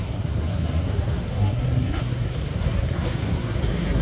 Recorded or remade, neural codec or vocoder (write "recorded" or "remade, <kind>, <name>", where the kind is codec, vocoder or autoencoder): remade, codec, SNAC